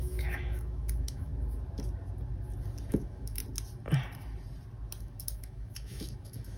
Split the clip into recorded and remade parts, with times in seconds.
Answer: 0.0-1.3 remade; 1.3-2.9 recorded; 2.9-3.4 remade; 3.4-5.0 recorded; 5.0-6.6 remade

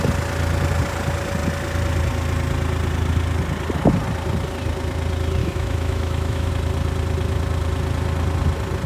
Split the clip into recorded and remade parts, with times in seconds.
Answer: 0.0-5.4 recorded; 5.4-6.5 remade; 6.5-8.9 recorded

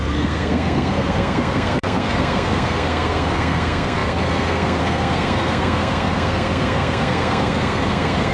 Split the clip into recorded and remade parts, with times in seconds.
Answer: 0.0-8.3 remade

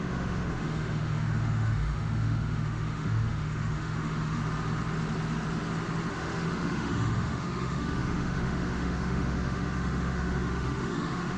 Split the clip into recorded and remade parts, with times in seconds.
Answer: 0.0-4.4 remade; 4.4-6.1 recorded; 6.1-11.4 remade